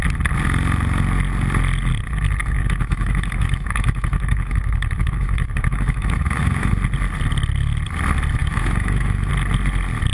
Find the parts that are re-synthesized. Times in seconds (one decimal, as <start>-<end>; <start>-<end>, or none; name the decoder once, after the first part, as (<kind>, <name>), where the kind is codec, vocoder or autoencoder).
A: 2.4-6.7 (autoencoder, DAC-VAE); 8.4-9.3